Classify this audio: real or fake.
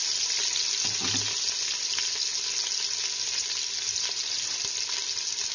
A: real